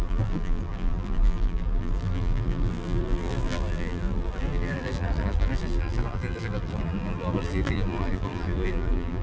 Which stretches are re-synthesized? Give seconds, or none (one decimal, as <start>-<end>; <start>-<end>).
0.0-9.2

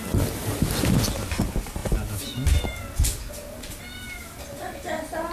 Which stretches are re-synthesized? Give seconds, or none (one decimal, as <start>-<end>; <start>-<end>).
none

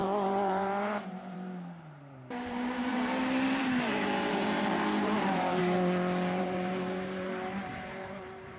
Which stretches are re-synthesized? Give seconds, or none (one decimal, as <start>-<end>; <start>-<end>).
0.0-5.6; 6.4-8.6

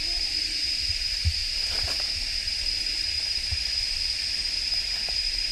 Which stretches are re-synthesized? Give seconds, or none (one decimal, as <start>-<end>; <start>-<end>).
0.0-1.4; 2.8-3.6; 4.6-5.5